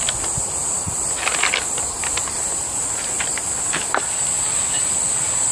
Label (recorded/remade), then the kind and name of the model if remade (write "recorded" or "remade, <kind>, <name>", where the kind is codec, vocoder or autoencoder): recorded